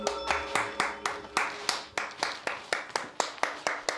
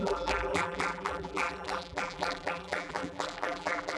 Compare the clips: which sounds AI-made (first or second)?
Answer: second